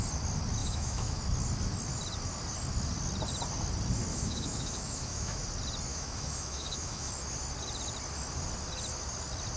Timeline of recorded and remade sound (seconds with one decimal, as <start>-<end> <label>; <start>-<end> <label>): 0.0-0.6 recorded; 0.6-1.2 remade; 1.2-4.1 recorded; 4.1-5.4 remade; 5.4-5.9 recorded; 5.9-7.1 remade; 7.1-9.6 recorded